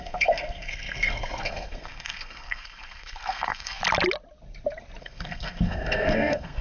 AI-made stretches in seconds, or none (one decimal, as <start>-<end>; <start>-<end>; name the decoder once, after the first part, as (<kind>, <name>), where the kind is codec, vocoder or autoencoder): 0.0-3.8 (codec, SNAC); 5.0-6.6

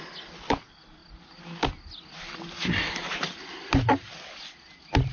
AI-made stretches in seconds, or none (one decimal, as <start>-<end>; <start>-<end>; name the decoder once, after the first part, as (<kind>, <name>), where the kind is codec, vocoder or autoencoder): none

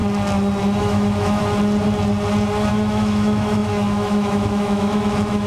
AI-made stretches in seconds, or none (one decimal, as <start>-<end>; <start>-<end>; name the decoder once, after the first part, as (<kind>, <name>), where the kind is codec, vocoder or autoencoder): 0.8-1.4 (autoencoder, DAC-VAE); 2.7-5.5

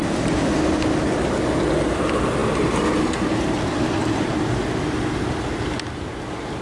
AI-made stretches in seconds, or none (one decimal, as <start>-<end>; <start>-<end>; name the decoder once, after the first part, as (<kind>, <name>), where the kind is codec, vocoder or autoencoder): none

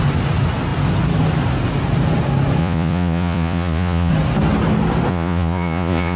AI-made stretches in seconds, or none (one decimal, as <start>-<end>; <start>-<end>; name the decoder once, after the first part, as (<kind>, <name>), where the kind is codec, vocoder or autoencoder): 2.6-4.1 (vocoder, Vocos); 5.1-6.2